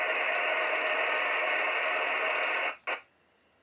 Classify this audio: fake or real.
real